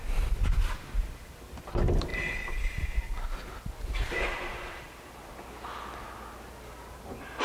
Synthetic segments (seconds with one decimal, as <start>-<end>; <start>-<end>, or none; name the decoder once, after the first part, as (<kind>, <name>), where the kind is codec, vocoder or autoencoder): none